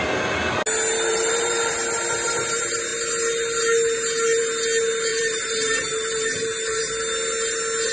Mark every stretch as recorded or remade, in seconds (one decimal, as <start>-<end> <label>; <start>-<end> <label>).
0.0-1.1 recorded; 1.1-1.7 remade; 1.7-5.1 recorded; 5.1-6.8 remade; 6.8-7.9 recorded